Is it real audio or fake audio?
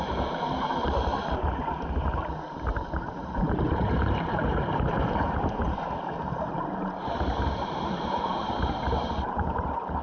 fake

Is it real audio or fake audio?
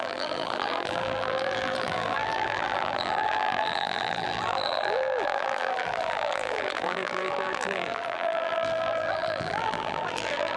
fake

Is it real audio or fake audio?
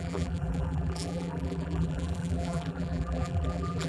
fake